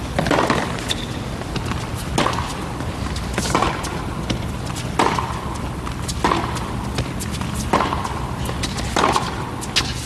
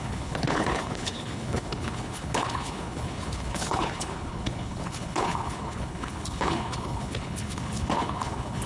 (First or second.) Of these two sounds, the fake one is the second